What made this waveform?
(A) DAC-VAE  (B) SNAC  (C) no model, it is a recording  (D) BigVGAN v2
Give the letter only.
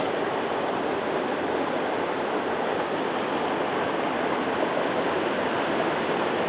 C